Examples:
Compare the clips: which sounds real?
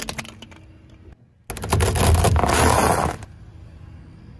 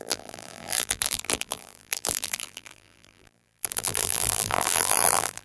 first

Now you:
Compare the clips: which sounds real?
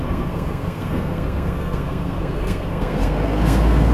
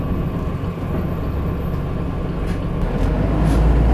second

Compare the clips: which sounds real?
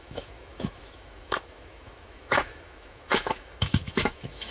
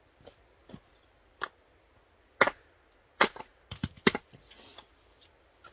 second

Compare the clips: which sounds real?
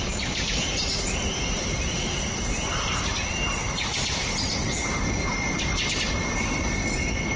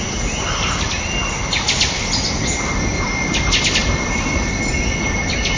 second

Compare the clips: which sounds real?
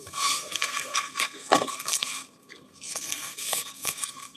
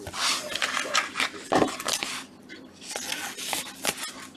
second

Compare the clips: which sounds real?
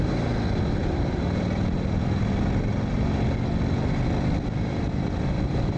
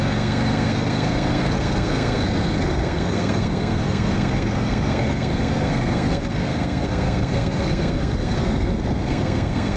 first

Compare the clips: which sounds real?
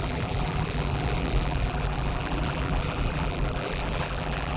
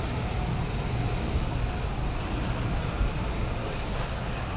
second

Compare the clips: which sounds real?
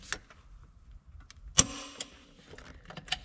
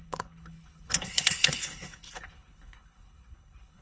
first